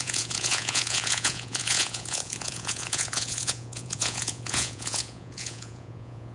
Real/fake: fake